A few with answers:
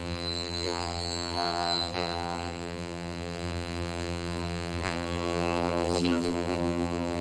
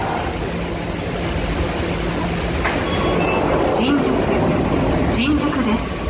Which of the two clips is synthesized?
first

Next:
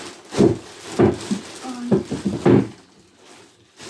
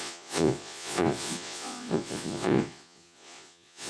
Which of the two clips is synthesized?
second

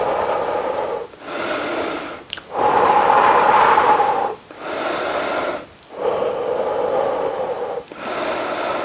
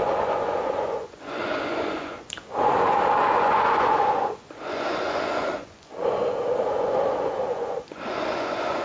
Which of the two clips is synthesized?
second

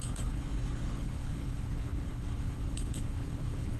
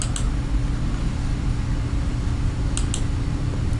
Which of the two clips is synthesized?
first